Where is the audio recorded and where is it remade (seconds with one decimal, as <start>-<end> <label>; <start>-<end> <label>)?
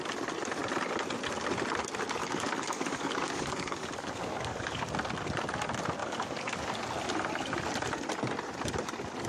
0.0-2.2 recorded; 2.2-4.8 remade; 4.8-6.0 recorded; 6.0-6.8 remade; 6.8-9.3 recorded